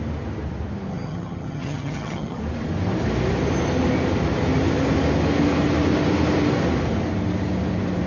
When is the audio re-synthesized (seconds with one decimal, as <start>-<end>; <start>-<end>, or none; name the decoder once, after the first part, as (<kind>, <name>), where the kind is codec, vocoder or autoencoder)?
0.9-2.4 (vocoder, HiFi-GAN)